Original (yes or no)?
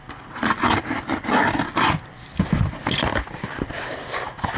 yes